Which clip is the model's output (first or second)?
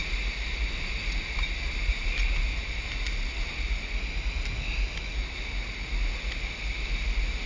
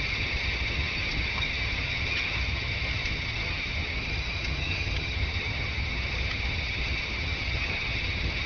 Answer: second